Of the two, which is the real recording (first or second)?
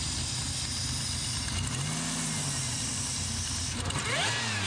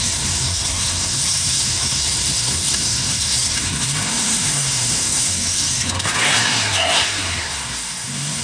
first